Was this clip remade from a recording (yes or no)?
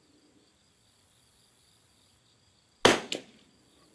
no